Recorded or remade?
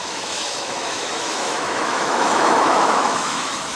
remade